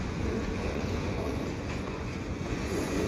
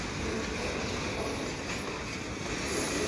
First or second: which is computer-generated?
first